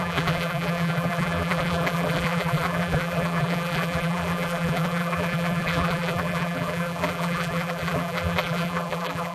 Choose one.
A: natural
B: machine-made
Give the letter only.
B